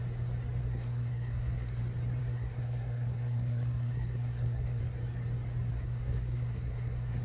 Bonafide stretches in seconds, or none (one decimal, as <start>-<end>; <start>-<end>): 0.0-0.6; 1.8-2.2; 4.8-5.7